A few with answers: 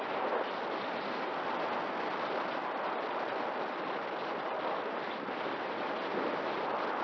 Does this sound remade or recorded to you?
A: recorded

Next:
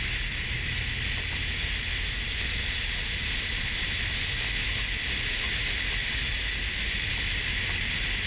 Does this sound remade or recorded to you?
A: recorded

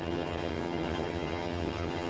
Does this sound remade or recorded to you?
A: remade